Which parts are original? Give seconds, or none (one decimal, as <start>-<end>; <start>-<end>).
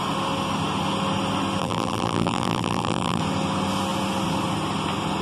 0.0-1.6; 3.2-5.2